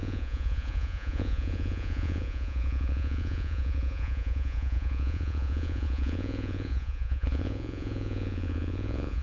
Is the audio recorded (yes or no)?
no